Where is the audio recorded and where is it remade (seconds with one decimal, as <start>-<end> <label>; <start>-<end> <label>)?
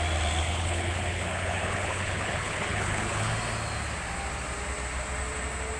0.0-0.4 recorded; 0.4-3.3 remade; 3.3-5.8 recorded